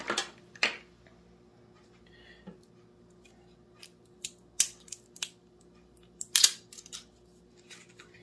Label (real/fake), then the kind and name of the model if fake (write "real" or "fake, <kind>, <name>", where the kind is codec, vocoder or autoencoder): real